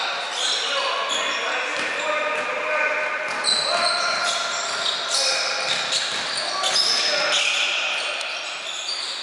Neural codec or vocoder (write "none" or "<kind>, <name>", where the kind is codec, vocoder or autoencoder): none